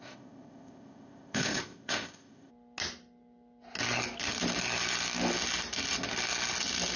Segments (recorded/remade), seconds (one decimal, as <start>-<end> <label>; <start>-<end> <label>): 0.0-2.5 remade; 2.5-7.0 recorded